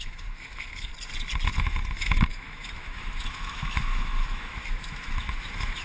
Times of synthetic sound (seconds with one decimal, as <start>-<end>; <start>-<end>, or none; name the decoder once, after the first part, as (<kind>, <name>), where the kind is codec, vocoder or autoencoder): 0.0-0.9 (autoencoder, DAC-VAE); 1.6-5.8